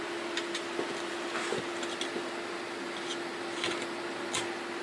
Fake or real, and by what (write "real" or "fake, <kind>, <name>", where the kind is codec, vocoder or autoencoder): real